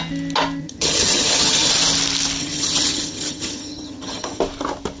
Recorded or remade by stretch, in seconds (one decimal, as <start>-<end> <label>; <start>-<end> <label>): 0.0-0.6 recorded; 0.6-1.7 remade; 1.7-2.4 recorded; 2.4-4.4 remade; 4.4-5.0 recorded

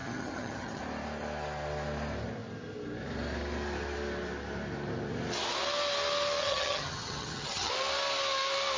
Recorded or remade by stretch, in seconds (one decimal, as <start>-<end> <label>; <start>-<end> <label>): 0.0-0.8 remade; 0.8-6.4 recorded; 6.4-7.7 remade; 7.7-8.8 recorded

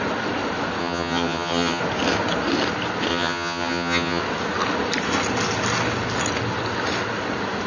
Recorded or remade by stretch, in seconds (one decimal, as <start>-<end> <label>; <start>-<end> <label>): 0.0-0.8 recorded; 0.8-1.8 remade; 1.8-3.1 recorded; 3.1-4.2 remade; 4.2-7.7 recorded

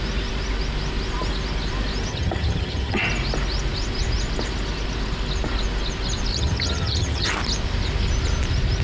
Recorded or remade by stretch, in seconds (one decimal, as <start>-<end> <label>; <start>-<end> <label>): 0.0-2.1 recorded; 2.1-3.1 remade; 3.1-6.3 recorded; 6.3-7.3 remade; 7.3-8.8 recorded